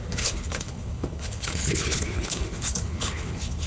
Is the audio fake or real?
fake